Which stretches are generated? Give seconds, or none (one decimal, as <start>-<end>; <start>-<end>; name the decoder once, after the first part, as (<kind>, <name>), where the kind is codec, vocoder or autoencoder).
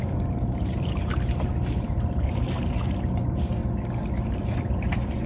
0.0-3.6 (vocoder, BigVGAN v2); 4.3-5.3